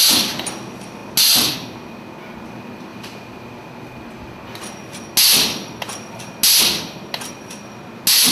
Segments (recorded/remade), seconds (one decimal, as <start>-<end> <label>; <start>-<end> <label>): 0.0-2.9 recorded; 2.9-3.5 remade; 3.5-8.3 recorded